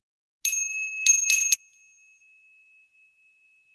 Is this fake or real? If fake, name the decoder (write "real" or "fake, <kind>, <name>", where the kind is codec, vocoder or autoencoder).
real